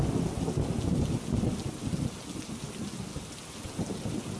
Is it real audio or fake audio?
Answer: real